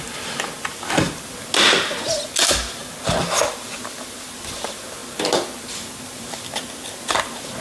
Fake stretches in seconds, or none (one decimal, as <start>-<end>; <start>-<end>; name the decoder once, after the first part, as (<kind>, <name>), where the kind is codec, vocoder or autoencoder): none